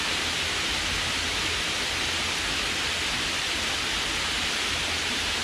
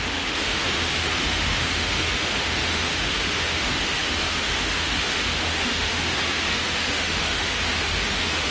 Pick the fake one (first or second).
second